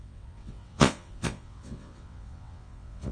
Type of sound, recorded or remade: remade